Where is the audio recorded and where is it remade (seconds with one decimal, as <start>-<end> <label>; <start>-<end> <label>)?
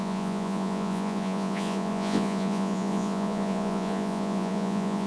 0.0-5.1 remade